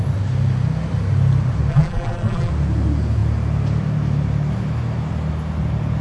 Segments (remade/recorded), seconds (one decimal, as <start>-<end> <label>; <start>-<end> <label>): 0.0-1.7 recorded; 1.7-2.5 remade; 2.5-6.0 recorded